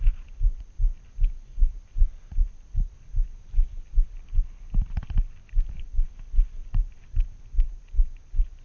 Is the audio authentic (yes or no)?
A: yes